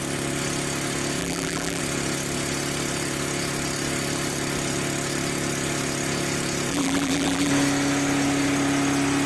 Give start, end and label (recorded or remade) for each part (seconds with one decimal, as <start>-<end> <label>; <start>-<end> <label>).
0.0-1.2 recorded; 1.2-1.8 remade; 1.8-6.7 recorded; 6.7-7.5 remade; 7.5-9.3 recorded